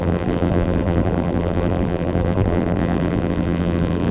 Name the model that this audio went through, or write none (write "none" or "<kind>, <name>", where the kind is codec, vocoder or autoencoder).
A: vocoder, BigVGAN v2